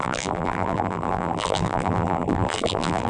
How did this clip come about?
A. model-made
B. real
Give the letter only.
A